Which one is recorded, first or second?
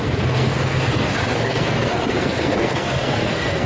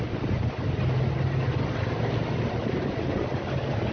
second